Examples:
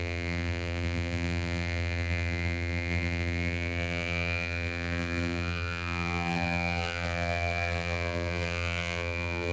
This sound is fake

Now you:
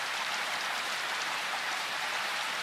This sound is fake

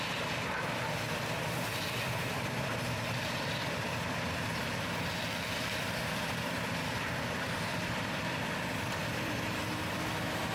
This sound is fake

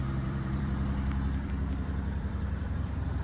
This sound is fake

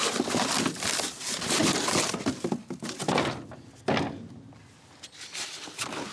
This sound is real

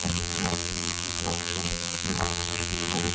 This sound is fake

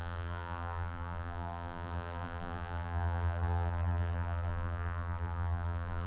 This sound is fake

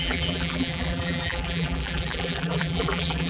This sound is fake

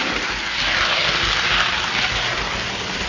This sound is real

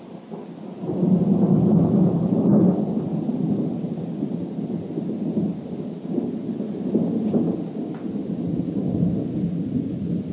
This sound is real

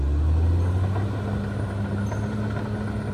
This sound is real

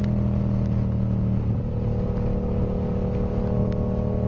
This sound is real